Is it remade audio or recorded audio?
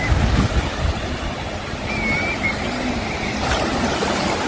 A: recorded